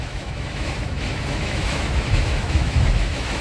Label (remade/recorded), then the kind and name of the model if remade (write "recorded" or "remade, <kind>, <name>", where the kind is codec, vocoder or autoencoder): remade, autoencoder, DAC-VAE